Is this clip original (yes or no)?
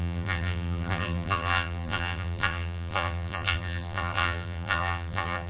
no